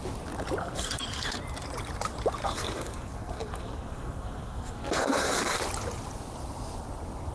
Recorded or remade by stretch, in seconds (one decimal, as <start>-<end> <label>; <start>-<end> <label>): 0.0-0.6 recorded; 0.6-1.4 remade; 1.4-2.4 recorded; 2.4-5.6 remade; 5.6-7.3 recorded

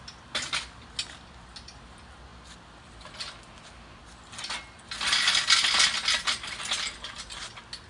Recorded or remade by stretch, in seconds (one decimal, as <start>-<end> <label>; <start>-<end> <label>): 0.0-7.9 recorded

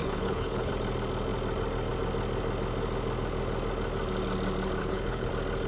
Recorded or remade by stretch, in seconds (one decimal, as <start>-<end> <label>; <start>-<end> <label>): 0.0-0.7 remade; 0.7-4.8 recorded; 4.8-5.3 remade; 5.3-5.7 recorded